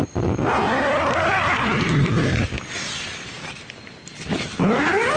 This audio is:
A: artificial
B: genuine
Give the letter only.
B